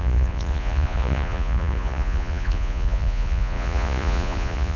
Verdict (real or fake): fake